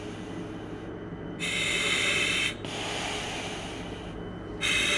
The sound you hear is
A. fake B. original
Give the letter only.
B